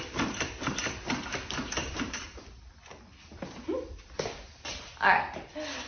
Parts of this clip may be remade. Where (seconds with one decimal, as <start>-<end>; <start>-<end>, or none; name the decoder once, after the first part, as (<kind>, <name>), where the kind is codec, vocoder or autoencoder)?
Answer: 1.8-2.7 (vocoder, BigVGAN v2)